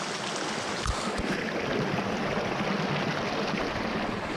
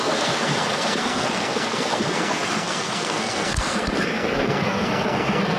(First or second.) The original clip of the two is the first